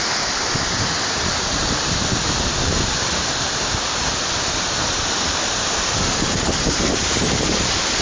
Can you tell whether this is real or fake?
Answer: fake